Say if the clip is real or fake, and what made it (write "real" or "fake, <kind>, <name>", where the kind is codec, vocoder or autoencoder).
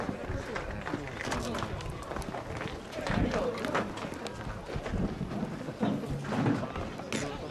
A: real